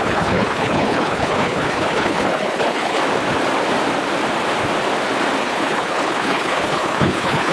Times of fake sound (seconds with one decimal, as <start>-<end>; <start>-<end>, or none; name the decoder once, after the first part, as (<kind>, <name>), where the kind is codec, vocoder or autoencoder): 0.0-3.0 (codec, HILCodec); 5.4-7.5